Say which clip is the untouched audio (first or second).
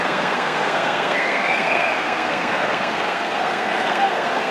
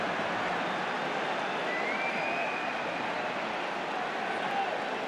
second